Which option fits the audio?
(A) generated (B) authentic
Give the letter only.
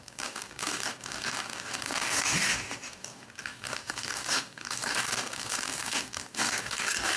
A